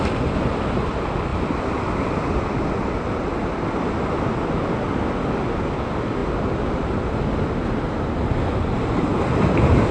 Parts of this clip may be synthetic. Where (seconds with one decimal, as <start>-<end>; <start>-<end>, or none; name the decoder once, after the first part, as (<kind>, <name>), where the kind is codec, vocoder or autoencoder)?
none